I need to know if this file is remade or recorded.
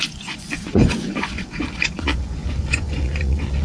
remade